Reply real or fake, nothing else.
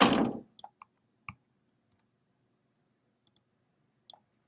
real